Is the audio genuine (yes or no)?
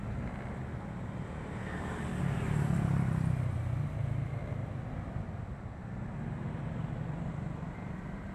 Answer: yes